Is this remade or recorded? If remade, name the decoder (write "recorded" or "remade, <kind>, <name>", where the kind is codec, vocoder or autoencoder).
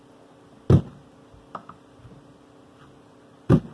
recorded